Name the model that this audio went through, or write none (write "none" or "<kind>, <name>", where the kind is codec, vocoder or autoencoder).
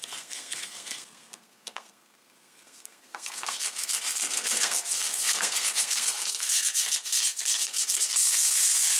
codec, SNAC